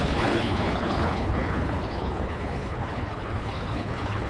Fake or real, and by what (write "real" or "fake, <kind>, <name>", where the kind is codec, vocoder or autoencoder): fake, codec, HILCodec